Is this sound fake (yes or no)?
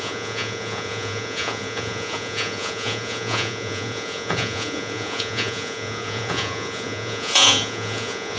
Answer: yes